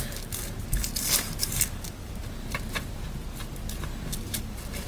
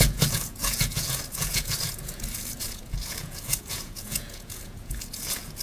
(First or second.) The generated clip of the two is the second